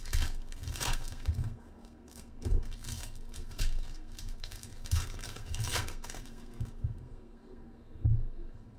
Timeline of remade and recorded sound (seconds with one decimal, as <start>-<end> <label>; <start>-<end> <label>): 0.0-8.8 remade